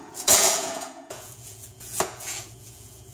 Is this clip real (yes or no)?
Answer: no